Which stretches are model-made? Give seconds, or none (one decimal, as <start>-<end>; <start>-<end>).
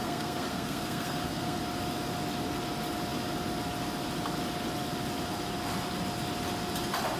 0.0-1.6